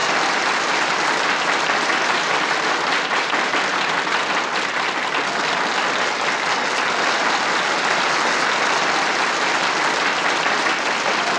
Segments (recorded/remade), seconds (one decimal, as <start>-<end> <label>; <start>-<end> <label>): 0.0-11.4 recorded